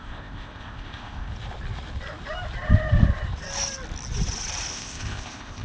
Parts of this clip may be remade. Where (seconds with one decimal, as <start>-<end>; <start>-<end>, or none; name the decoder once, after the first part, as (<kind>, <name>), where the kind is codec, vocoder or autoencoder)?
0.0-1.3 (codec, ZipCodec); 4.7-5.6